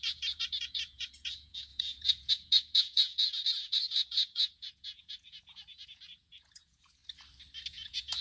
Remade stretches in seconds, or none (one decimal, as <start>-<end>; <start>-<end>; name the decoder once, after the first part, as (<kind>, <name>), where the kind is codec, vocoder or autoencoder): 0.0-7.0 (vocoder, Vocos); 7.7-8.2